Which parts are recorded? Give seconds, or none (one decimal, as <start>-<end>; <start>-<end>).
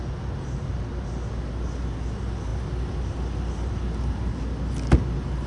0.0-5.5